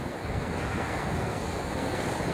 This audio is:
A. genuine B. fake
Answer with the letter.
B